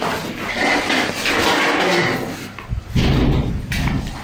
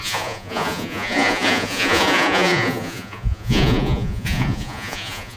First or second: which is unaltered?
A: first